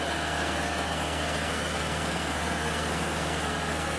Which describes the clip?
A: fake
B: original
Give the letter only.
A